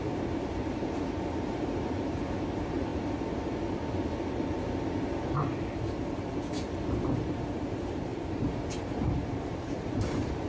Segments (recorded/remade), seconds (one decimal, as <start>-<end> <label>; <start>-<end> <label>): 0.0-2.9 remade; 2.9-7.6 recorded; 7.6-10.5 remade